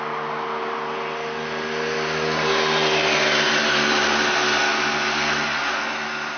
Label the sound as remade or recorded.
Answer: recorded